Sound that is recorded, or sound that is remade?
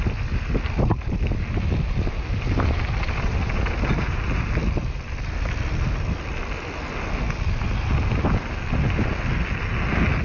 recorded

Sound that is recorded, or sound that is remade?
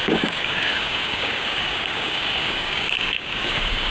remade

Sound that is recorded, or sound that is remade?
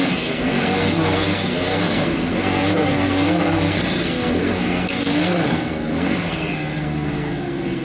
remade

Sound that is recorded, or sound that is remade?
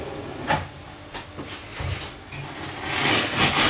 recorded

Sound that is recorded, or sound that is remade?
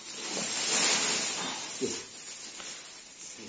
recorded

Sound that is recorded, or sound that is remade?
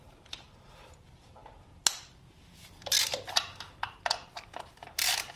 remade